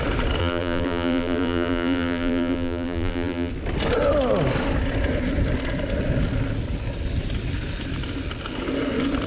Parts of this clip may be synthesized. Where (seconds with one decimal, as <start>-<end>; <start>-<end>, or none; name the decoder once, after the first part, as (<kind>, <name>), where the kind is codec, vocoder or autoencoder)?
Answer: 0.4-3.5 (vocoder, BigVGAN v2)